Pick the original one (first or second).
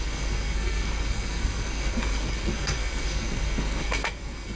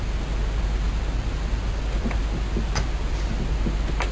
second